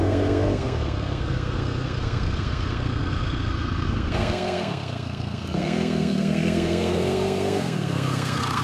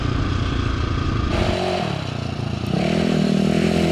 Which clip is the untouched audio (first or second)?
second